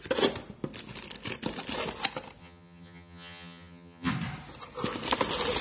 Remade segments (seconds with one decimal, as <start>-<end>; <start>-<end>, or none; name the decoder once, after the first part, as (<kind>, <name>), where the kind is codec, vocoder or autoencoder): 2.4-4.1 (vocoder, HiFi-GAN)